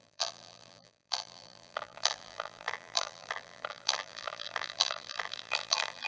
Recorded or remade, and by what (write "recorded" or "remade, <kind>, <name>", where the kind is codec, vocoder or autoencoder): remade, vocoder, BigVGAN v2